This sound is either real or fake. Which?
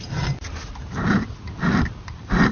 real